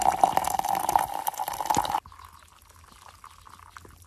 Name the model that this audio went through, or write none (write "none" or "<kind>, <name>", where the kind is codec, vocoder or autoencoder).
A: none